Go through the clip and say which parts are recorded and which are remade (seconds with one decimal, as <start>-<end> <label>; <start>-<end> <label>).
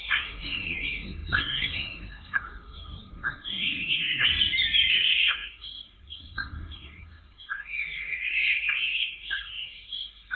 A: 0.0-4.3 remade; 4.3-4.9 recorded; 4.9-10.4 remade